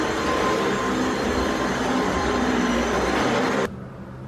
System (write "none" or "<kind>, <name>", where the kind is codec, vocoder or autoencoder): none